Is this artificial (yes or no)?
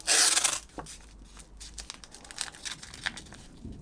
no